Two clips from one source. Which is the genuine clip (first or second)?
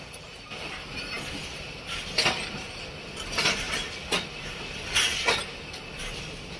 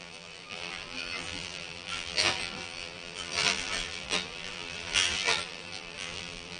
first